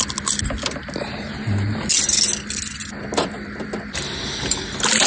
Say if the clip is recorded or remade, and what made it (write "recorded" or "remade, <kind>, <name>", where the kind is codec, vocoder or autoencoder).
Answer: recorded